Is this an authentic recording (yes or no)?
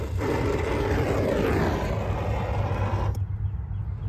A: yes